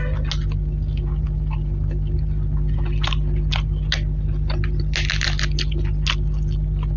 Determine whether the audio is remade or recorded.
recorded